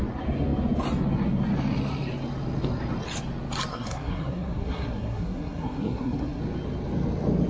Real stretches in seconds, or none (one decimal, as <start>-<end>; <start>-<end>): 0.0-3.7; 6.4-7.5